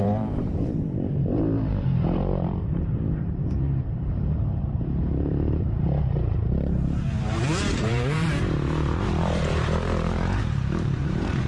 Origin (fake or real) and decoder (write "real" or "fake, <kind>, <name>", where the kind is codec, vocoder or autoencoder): fake, vocoder, BigVGAN v2